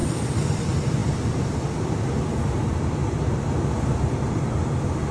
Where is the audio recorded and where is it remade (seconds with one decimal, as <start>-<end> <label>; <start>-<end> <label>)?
0.0-5.1 recorded